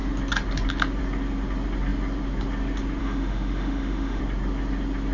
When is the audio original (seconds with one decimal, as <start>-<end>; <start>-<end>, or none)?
0.0-3.0; 4.2-5.1

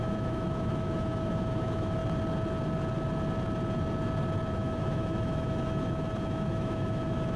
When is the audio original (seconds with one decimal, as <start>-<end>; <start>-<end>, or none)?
2.0-4.5